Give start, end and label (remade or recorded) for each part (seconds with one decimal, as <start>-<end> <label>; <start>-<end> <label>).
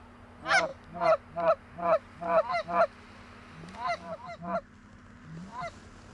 0.0-6.1 recorded